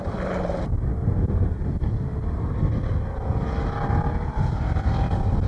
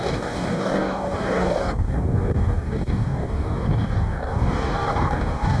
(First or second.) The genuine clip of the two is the first